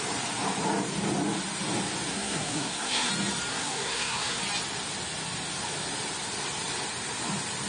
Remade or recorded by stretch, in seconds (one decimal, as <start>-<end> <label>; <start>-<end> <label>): 0.0-2.1 recorded; 2.1-3.1 remade; 3.1-3.5 recorded; 3.5-4.4 remade; 4.4-7.7 recorded